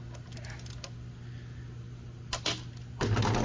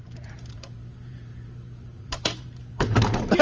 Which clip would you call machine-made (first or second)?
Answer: second